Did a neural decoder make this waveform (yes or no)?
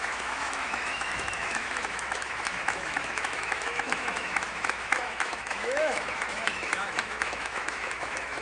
yes